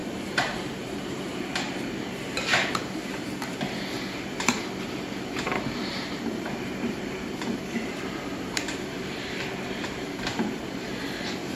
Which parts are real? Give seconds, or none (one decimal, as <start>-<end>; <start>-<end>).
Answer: none